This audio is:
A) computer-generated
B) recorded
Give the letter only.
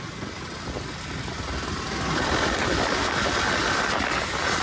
B